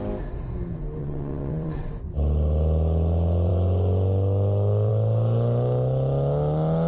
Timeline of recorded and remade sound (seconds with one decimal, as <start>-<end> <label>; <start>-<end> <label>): 0.0-1.0 recorded; 1.0-1.9 remade; 1.9-6.9 recorded